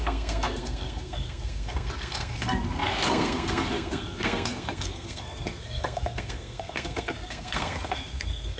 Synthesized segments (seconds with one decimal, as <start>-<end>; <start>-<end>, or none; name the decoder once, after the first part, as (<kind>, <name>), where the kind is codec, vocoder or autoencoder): 0.0-8.6 (codec, SNAC)